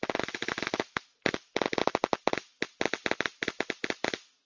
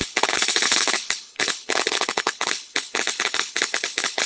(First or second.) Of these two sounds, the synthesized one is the second